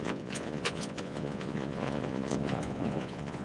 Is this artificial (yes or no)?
yes